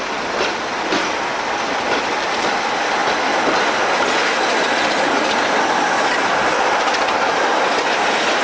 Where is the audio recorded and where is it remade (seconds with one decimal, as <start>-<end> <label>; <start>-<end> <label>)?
0.0-8.4 recorded